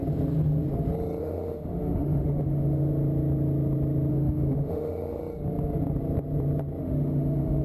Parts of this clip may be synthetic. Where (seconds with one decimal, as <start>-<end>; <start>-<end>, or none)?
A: 1.2-2.9; 4.1-5.2; 6.8-7.6